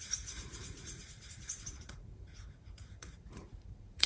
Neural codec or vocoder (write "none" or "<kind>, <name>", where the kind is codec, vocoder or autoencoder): vocoder, Vocos